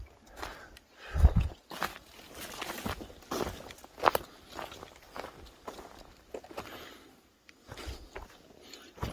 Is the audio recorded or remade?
recorded